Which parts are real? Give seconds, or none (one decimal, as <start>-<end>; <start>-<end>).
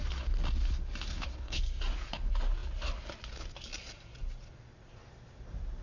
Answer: 0.0-1.1; 1.6-5.8